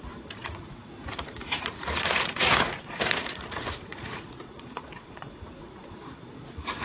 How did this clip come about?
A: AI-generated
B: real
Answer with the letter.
A